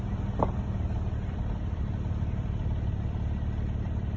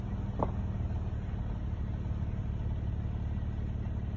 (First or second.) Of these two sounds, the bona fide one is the second